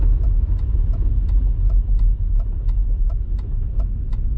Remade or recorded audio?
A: recorded